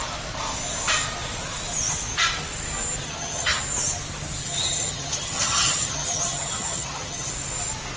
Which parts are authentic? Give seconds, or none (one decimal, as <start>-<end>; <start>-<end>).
0.0-3.0; 3.6-4.4; 7.3-8.0